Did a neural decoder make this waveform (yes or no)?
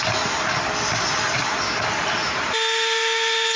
no